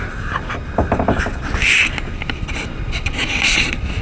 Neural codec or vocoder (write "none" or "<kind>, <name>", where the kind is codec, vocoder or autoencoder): none